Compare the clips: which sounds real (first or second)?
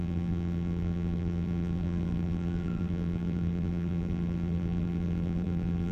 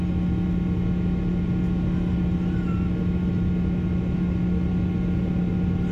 second